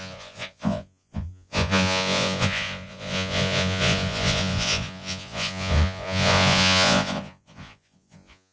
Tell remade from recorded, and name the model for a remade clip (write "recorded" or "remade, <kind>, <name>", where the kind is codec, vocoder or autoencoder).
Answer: remade, vocoder, Vocos